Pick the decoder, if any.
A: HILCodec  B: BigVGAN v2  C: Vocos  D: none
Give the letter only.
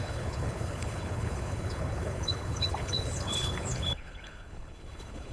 A